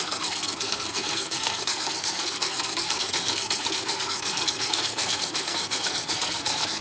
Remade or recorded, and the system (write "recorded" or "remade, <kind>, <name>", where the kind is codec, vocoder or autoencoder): remade, codec, SNAC